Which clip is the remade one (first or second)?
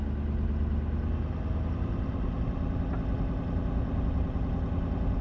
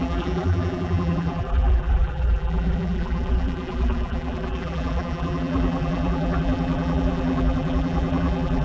second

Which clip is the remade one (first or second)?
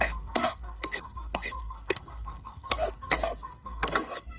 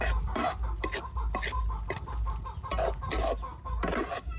first